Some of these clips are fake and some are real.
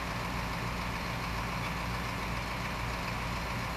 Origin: real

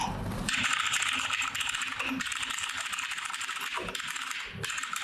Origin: fake